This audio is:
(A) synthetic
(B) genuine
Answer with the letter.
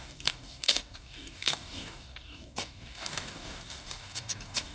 A